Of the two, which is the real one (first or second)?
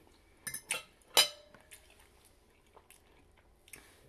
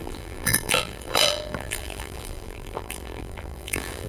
first